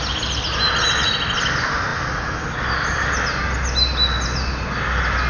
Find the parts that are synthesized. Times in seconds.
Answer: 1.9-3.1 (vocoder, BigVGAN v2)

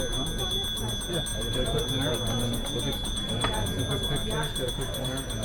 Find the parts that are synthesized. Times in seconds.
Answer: 1.3-1.8 (vocoder, Vocos); 2.4-3.8

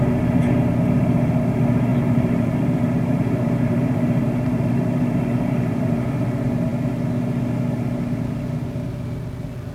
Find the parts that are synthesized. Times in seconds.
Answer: 1.9-6.0 (vocoder, BigVGAN v2)